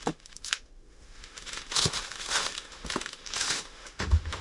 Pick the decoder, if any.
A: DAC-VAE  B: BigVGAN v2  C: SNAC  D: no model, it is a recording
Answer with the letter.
A